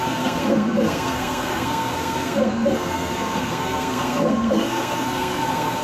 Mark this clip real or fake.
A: fake